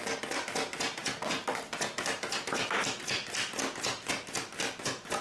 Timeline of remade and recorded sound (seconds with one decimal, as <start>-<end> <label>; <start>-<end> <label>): 0.0-5.2 recorded